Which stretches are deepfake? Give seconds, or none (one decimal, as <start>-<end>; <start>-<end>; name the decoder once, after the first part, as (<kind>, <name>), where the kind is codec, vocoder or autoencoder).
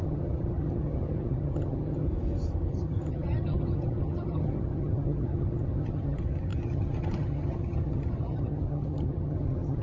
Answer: 0.0-2.1 (vocoder, HiFi-GAN); 2.7-9.8